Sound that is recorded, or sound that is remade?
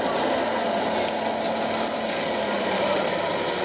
recorded